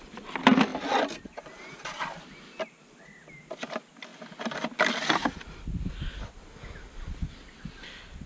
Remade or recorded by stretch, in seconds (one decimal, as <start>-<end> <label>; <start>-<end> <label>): 0.0-8.3 recorded